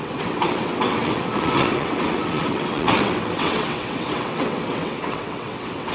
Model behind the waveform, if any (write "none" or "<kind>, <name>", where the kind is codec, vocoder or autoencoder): vocoder, WaveNeXt